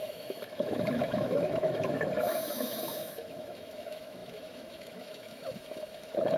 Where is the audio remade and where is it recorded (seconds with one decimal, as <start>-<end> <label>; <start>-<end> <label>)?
0.0-6.4 remade